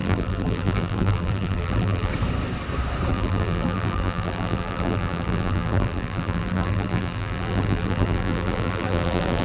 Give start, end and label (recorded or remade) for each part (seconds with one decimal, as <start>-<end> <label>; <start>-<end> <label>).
0.0-2.1 remade; 2.1-3.1 recorded; 3.1-9.4 remade